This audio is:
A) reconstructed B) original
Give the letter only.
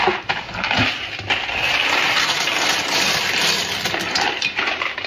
A